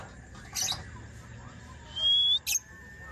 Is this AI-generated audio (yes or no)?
no